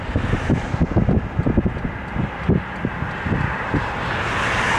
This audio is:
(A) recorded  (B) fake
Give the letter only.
A